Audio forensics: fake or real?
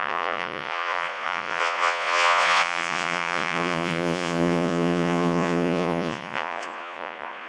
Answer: fake